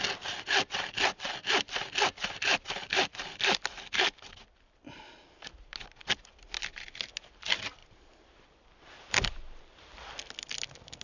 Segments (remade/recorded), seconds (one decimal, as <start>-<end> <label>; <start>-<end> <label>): 0.0-11.0 recorded